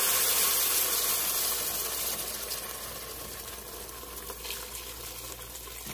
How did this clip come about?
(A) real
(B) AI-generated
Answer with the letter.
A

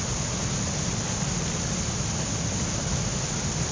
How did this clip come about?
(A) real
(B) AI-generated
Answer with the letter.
A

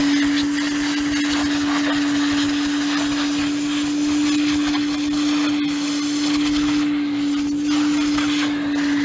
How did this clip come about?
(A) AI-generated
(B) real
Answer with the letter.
B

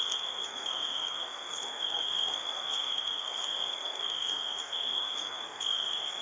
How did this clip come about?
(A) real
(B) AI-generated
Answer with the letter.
B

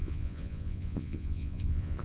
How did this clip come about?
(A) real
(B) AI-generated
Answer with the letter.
B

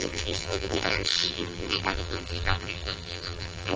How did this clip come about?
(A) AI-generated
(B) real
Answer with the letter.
A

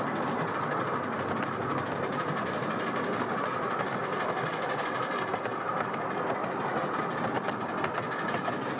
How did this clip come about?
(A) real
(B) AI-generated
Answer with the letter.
A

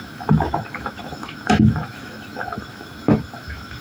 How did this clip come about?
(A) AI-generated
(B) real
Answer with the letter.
A